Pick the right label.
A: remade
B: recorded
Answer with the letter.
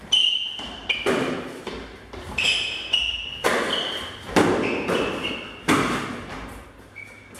B